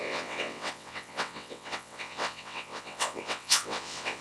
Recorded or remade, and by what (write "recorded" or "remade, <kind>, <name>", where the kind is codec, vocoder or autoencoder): remade, vocoder, WaveNeXt